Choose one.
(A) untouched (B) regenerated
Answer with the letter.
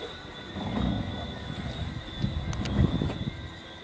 A